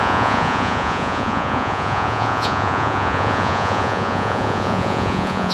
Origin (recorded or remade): remade